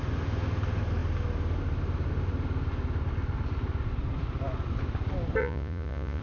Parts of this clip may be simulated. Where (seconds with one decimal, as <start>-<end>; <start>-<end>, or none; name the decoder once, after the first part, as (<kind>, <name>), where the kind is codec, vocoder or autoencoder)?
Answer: 5.4-6.2 (vocoder, Vocos)